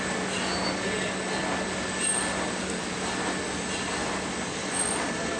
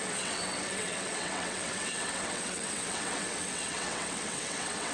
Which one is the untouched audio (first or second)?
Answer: first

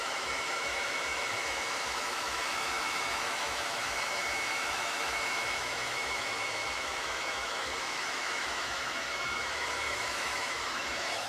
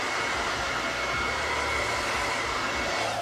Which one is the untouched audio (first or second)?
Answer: second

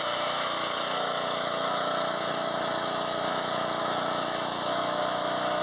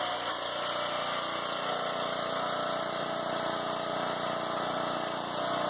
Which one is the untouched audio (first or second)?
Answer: second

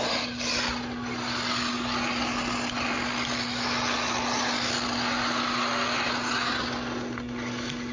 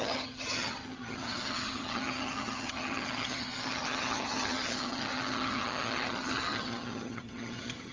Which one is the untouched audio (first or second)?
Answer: first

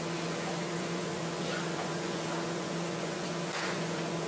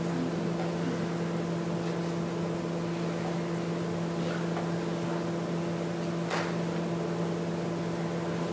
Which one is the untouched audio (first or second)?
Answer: second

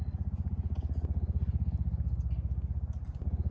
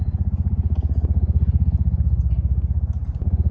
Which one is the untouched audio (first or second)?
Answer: first